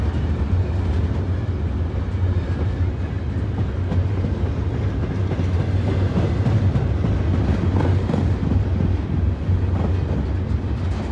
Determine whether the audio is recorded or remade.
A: recorded